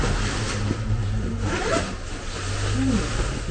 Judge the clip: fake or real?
real